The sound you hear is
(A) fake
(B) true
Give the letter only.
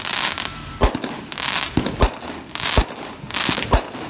B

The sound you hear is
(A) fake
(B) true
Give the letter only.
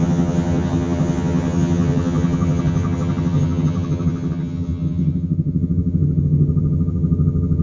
A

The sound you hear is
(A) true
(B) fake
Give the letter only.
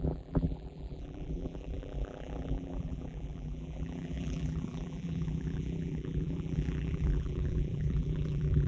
B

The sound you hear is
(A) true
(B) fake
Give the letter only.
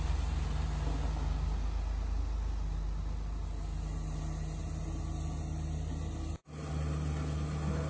A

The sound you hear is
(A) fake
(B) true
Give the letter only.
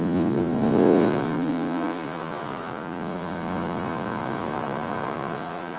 A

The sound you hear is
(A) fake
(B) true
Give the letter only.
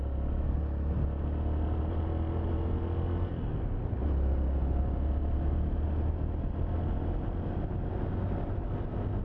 B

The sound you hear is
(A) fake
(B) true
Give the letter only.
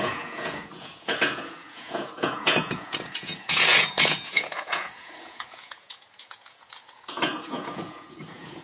A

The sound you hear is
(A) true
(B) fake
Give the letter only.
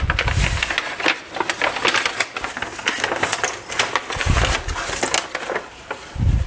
A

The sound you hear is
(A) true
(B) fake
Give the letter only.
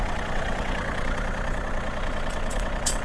B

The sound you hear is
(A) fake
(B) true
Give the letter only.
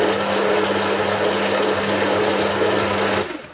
B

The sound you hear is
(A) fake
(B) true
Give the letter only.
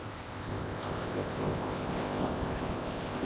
A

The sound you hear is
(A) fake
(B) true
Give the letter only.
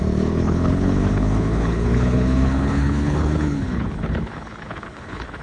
A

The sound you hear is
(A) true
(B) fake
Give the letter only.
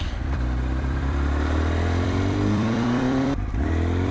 B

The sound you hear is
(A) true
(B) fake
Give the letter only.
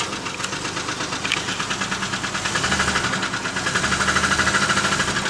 A